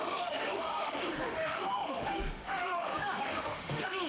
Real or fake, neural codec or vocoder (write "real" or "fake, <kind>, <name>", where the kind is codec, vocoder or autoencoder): fake, autoencoder, DAC-VAE